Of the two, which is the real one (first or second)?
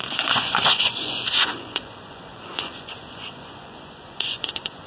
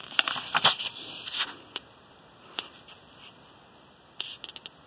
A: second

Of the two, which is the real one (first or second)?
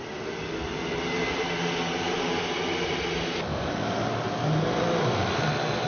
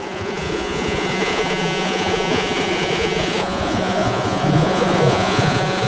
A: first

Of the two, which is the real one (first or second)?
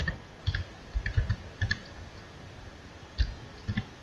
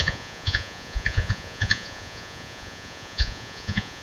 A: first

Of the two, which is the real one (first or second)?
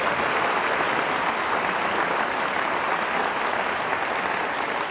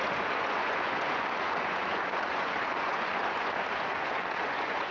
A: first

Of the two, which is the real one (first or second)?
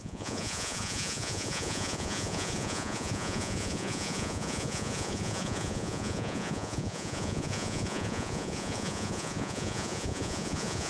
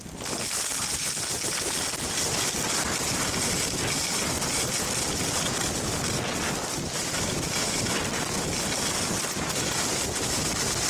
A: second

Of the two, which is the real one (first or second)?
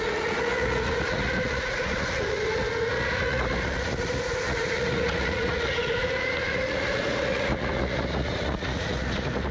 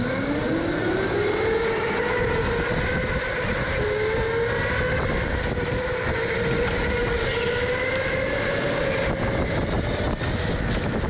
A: second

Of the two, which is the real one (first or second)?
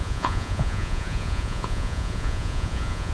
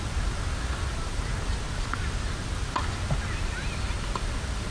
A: second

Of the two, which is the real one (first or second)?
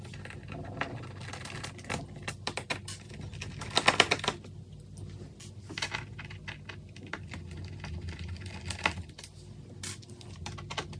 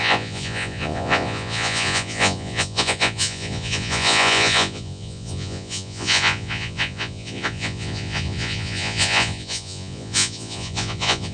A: first